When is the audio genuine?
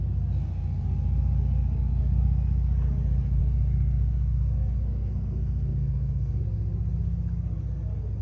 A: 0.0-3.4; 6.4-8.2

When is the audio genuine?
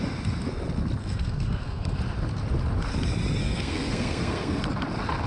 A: 0.0-1.0; 2.0-3.4; 4.6-5.3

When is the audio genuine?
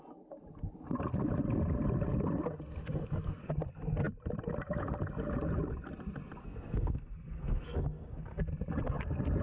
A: 0.0-6.4; 8.5-9.4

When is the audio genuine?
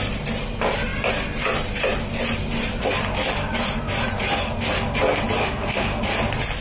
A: 0.0-5.4; 6.0-6.6